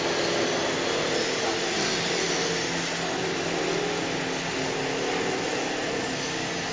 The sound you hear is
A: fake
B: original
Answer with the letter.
B